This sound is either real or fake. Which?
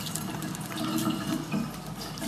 real